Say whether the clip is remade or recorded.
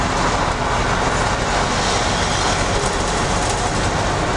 recorded